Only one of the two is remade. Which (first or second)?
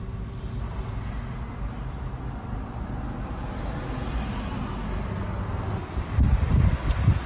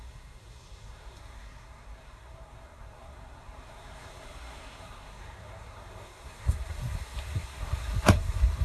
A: second